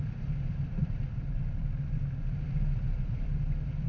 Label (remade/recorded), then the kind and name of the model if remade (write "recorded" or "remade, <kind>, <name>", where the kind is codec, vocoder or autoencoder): remade, vocoder, BigVGAN v2